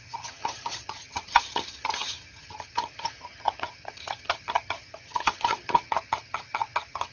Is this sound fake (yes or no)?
yes